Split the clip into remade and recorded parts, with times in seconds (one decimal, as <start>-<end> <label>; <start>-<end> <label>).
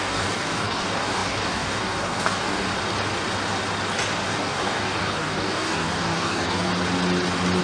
0.0-2.7 remade; 2.7-4.3 recorded; 4.3-6.7 remade; 6.7-7.6 recorded